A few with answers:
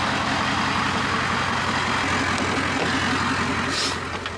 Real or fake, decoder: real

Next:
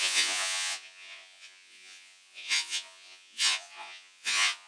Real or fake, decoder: fake, vocoder, Vocos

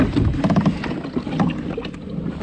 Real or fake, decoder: real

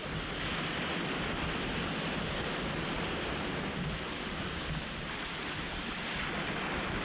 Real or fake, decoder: real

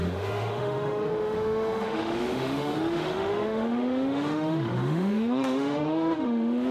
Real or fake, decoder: fake, autoencoder, DAC-VAE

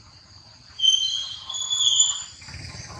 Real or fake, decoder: real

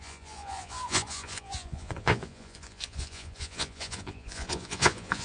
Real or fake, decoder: fake, vocoder, Vocos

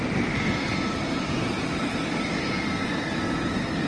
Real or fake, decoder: real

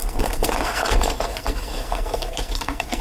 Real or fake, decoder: fake, codec, SNAC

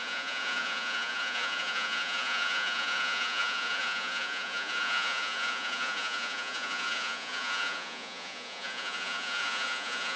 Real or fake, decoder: fake, vocoder, Vocos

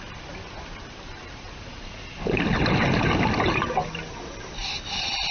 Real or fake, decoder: real